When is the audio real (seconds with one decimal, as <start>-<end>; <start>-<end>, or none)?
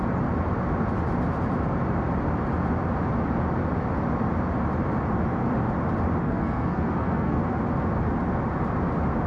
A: 0.0-6.2; 7.4-9.3